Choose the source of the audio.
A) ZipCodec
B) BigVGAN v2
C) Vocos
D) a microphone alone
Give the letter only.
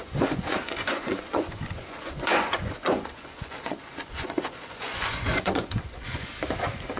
C